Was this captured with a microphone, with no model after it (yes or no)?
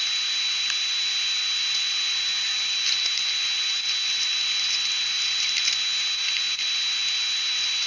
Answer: yes